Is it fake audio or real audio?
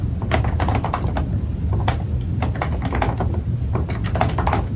real